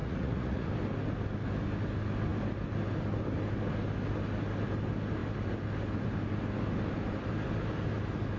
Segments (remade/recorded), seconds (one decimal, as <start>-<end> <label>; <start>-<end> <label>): 0.0-0.7 remade; 0.7-8.4 recorded